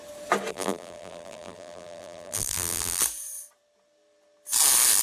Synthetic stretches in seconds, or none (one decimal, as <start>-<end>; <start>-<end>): 0.5-3.0